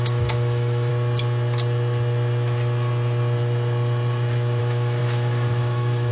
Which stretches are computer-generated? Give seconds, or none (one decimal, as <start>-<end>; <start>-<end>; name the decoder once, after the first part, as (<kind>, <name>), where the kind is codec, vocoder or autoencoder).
0.0-0.9 (autoencoder, DAC-VAE); 4.6-6.1